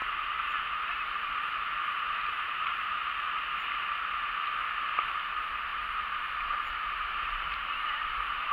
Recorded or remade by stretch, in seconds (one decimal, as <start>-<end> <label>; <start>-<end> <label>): 0.0-2.3 recorded; 2.3-3.1 remade; 3.1-5.7 recorded; 5.7-8.5 remade